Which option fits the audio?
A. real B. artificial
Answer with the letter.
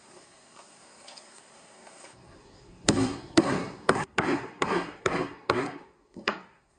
B